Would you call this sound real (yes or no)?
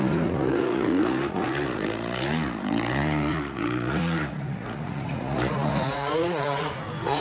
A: no